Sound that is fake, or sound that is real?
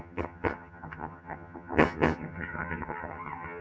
fake